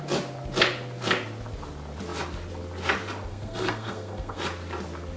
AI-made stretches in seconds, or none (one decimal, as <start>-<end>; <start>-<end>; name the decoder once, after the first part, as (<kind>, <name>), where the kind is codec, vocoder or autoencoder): 3.3-4.4 (codec, SNAC)